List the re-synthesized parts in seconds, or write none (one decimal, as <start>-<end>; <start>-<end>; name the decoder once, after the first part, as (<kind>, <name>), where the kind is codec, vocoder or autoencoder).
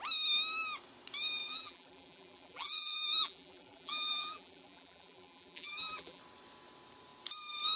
1.5-6.2 (vocoder, BigVGAN v2)